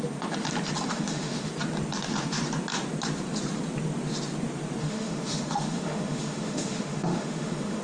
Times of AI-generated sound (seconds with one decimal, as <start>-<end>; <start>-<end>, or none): 0.9-1.5; 4.8-7.8